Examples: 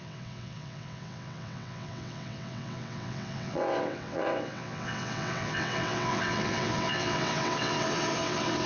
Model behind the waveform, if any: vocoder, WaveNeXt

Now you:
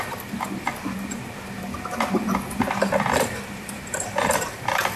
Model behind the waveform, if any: vocoder, BigVGAN v2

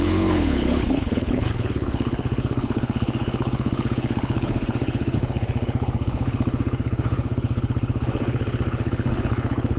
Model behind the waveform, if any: codec, HILCodec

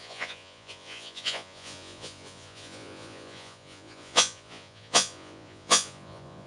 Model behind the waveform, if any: vocoder, Vocos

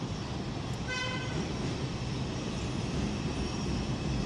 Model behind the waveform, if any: none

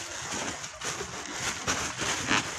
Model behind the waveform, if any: none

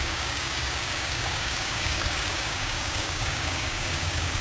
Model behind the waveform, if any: codec, DAC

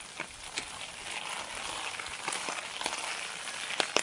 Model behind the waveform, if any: vocoder, BigVGAN v2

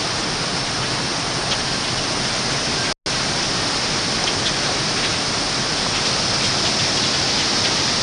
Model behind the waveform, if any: none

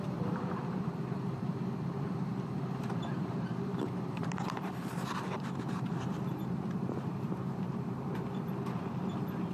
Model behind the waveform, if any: vocoder, BigVGAN v2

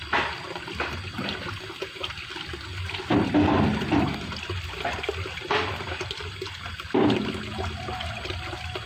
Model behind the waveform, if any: none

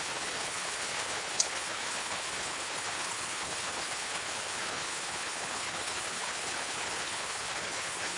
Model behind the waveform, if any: codec, HILCodec